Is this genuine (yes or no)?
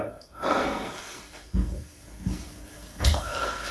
no